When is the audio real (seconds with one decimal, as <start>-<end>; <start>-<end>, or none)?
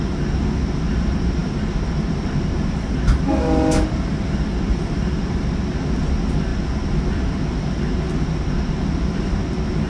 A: 0.0-9.9